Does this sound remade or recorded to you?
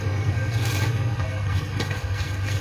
remade